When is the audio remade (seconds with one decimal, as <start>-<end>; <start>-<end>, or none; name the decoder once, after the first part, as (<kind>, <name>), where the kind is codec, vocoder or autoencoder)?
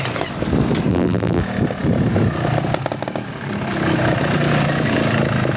0.9-1.4 (vocoder, BigVGAN v2)